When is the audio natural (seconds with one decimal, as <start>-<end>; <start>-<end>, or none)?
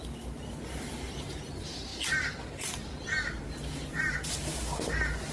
0.0-3.9; 4.6-5.3